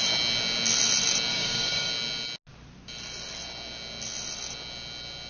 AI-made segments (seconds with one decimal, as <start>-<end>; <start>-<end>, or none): 1.3-1.9